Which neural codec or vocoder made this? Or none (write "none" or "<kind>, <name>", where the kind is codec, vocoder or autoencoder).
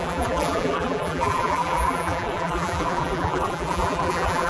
vocoder, BigVGAN v2